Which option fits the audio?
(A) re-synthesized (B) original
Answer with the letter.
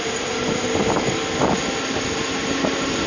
B